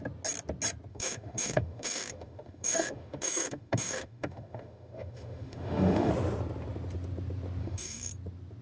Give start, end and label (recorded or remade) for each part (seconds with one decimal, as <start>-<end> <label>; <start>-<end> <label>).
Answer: 0.0-0.9 recorded; 0.9-6.1 remade; 6.1-7.6 recorded; 7.6-8.1 remade; 8.1-8.6 recorded